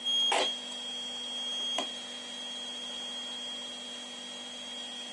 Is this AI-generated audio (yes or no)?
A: no